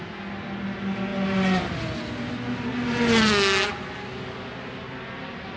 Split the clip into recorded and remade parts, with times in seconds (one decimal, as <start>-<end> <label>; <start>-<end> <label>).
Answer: 0.0-5.6 recorded